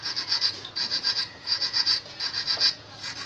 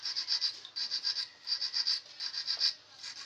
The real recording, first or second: second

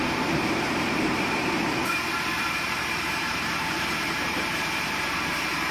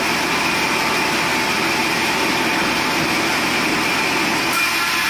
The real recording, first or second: second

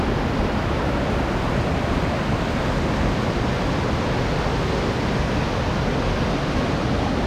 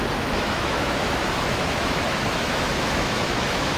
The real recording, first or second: first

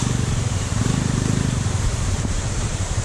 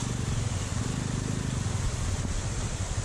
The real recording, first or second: second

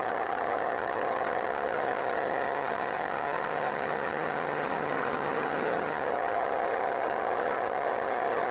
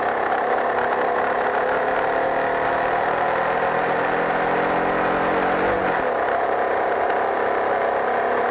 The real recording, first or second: second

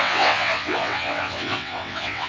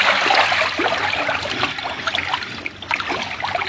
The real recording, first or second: second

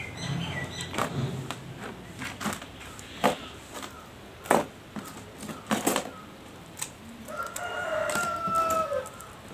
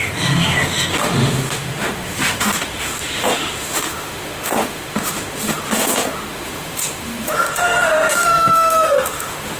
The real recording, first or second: first